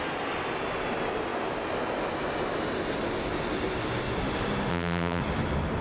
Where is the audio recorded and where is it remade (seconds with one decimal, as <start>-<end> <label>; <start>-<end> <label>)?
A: 0.0-4.7 recorded; 4.7-5.2 remade; 5.2-5.8 recorded